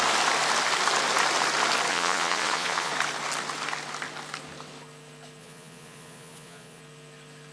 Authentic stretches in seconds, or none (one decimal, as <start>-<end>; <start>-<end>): 0.0-1.9; 2.9-5.4; 6.8-7.5